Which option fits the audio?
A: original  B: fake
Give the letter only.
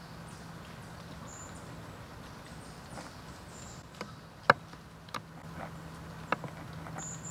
A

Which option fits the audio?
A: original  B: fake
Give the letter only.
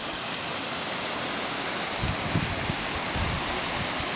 A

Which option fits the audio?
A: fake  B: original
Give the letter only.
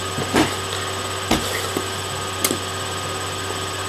B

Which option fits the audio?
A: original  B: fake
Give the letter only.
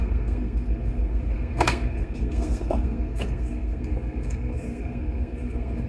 B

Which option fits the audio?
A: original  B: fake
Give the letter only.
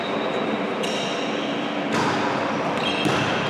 A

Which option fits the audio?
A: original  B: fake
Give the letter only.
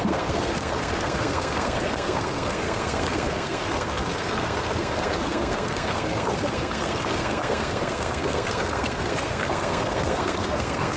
B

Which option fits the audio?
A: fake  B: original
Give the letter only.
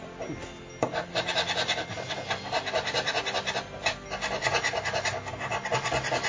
B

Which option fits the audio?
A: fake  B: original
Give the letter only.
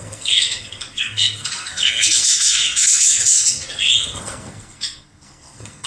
A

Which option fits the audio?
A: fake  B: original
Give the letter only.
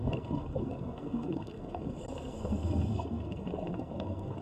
A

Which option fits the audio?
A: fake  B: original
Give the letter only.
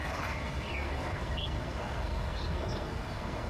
A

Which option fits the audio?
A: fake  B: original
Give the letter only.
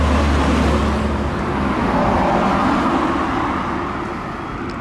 B